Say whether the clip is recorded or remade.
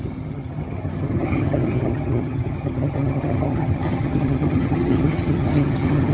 remade